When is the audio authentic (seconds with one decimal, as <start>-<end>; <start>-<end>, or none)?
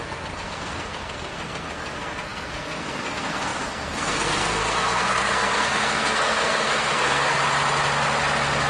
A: 7.4-8.7